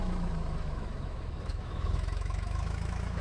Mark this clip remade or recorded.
remade